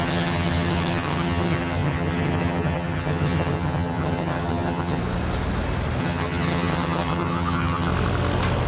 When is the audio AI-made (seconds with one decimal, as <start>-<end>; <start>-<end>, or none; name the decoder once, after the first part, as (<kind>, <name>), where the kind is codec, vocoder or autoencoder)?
0.0-5.0 (vocoder, HiFi-GAN); 6.0-7.9